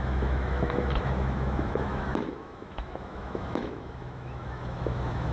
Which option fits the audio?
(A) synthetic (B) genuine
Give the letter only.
A